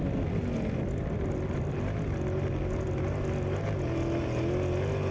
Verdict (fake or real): real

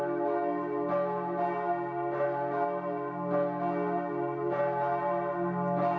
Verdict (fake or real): real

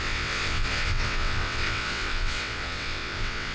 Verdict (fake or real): fake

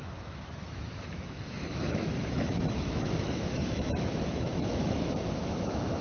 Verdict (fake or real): fake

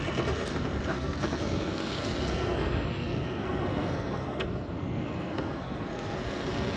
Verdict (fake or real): fake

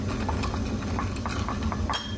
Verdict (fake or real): real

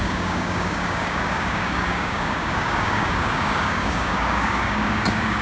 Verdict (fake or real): fake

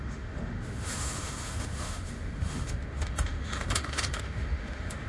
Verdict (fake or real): fake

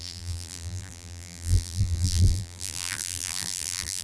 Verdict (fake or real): fake